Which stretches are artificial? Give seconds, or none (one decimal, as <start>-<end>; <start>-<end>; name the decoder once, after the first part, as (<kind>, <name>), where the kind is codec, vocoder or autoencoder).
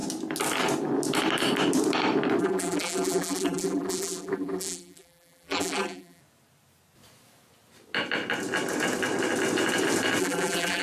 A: 2.4-6.2 (vocoder, BigVGAN v2); 10.2-10.8